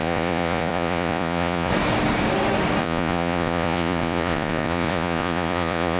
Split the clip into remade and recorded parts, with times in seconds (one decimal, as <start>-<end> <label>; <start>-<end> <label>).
0.0-1.7 remade; 1.7-2.8 recorded; 2.8-6.0 remade